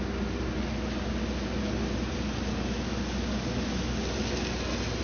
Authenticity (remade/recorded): recorded